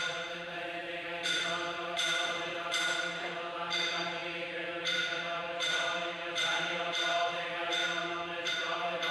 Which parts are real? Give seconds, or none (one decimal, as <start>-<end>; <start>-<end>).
4.2-4.7